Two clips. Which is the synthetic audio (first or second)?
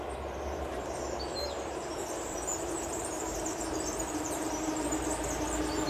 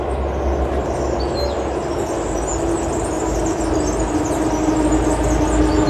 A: first